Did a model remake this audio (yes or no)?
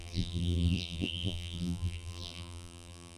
yes